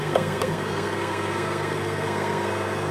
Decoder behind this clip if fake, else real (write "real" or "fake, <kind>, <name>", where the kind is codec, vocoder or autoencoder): fake, codec, SNAC